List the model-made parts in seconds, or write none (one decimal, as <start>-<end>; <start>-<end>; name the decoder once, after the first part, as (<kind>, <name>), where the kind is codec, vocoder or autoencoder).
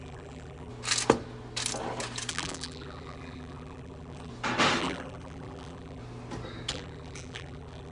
0.0-0.7 (vocoder, BigVGAN v2); 2.3-4.3; 4.8-6.0; 6.7-7.9